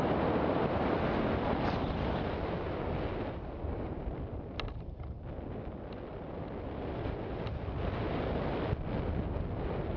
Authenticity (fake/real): real